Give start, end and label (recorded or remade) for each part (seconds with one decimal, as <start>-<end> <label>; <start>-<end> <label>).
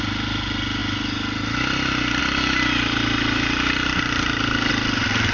0.0-5.3 recorded